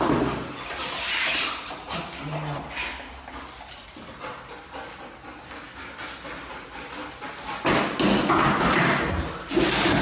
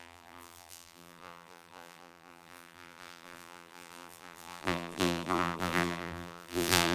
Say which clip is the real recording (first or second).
first